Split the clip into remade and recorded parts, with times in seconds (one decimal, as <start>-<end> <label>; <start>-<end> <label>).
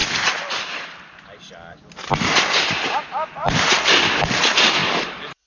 0.0-5.5 recorded